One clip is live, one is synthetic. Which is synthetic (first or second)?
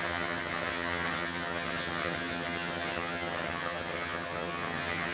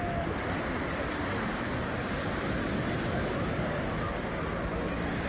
first